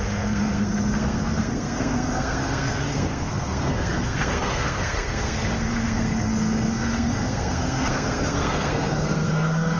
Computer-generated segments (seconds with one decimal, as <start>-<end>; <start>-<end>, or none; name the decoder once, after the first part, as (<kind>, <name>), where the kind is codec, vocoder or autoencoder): 0.0-9.8 (codec, SNAC)